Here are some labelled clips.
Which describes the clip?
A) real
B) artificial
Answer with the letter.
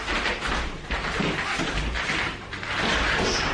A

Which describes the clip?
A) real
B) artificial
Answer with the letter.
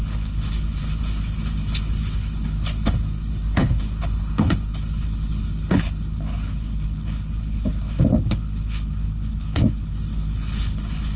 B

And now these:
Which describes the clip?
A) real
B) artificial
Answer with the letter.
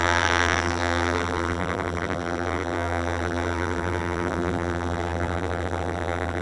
B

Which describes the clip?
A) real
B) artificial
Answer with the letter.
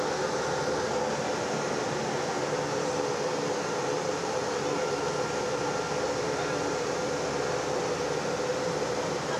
A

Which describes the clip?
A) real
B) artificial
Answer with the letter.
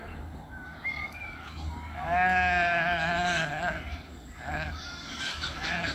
B